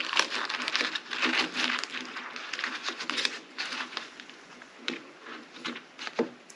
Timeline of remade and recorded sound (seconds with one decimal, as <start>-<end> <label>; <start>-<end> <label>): 0.0-2.1 recorded; 2.1-6.1 remade; 6.1-6.6 recorded

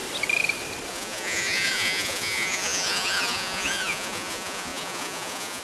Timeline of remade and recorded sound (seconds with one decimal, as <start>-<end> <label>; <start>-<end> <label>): 0.0-0.9 recorded; 0.9-5.6 remade